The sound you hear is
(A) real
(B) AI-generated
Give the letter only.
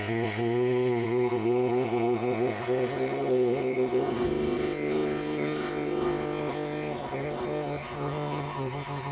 B